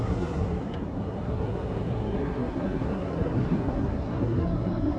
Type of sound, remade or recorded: remade